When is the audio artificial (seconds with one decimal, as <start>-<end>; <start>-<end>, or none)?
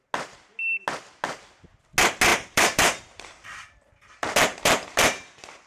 2.3-5.7